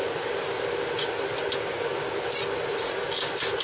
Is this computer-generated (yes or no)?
no